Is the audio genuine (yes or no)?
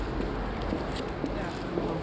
yes